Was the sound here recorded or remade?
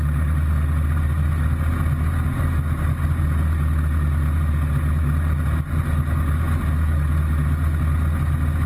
recorded